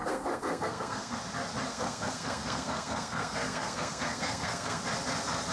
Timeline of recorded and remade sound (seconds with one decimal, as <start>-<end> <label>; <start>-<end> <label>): 0.0-1.2 remade; 1.2-1.7 recorded; 1.7-4.8 remade; 4.8-5.5 recorded